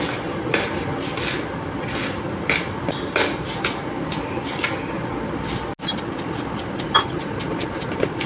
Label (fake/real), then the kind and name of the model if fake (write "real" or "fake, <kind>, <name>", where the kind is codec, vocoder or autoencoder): real